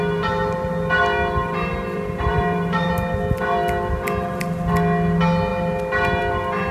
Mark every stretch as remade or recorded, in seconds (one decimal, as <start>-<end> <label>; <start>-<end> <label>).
0.0-2.3 recorded; 2.3-2.9 remade; 2.9-6.7 recorded